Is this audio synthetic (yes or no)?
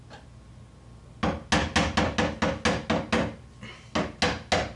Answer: no